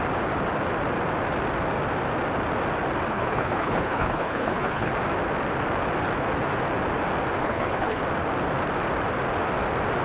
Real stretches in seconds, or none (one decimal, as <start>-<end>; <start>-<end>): 0.0-3.1; 4.9-7.4; 8.0-10.0

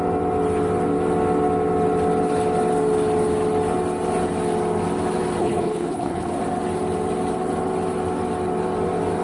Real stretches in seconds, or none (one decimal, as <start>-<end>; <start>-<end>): 0.0-5.4; 6.3-9.2